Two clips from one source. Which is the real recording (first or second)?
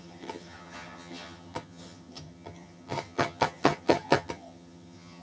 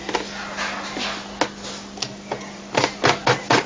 second